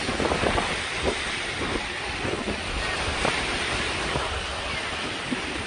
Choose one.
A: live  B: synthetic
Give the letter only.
A